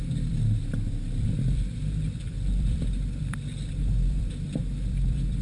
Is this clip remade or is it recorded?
remade